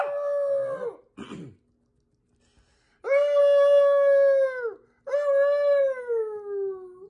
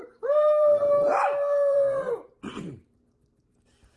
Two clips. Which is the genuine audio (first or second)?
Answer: first